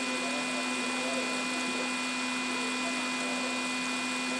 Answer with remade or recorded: recorded